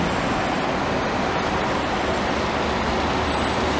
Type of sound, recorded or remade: recorded